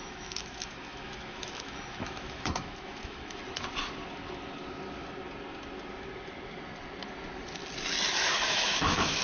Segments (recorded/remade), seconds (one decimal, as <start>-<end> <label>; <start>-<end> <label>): 0.0-3.4 remade; 3.4-8.1 recorded; 8.1-9.2 remade